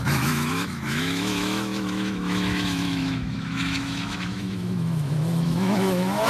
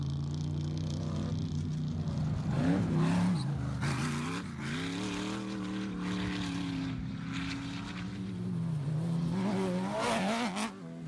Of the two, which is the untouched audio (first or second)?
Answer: second